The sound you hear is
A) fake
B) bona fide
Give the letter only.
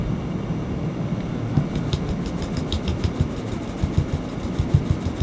B